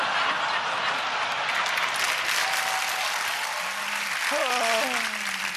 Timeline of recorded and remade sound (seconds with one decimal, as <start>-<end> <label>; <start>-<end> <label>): 0.0-5.6 recorded